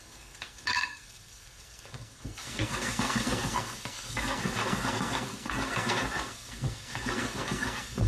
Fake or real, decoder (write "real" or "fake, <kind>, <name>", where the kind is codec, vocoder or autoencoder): fake, codec, SNAC